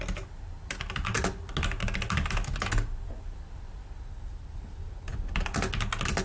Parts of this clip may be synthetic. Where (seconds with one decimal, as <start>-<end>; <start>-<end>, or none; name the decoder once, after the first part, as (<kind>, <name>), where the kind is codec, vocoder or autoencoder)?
none

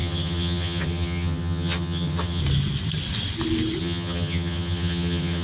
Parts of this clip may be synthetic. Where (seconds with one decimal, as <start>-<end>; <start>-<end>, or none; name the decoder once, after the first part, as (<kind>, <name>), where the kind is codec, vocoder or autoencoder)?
0.0-2.4 (vocoder, HiFi-GAN); 3.8-5.4

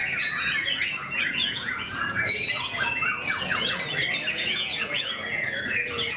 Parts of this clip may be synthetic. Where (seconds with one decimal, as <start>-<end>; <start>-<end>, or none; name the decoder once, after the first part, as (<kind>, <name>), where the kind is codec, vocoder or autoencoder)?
0.0-3.7 (vocoder, Vocos); 4.3-6.2

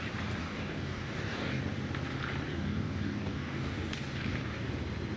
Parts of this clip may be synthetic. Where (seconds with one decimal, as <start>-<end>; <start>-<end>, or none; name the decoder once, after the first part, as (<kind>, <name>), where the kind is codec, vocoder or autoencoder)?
0.4-1.6 (codec, DAC); 2.5-4.7

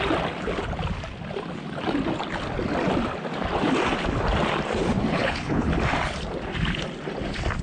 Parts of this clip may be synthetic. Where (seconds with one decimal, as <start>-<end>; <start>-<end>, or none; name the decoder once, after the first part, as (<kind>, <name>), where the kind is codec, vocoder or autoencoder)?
5.1-5.7 (codec, HILCodec)